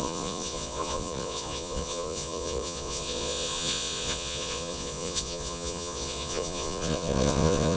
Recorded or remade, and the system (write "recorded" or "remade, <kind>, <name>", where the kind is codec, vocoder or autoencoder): remade, vocoder, Vocos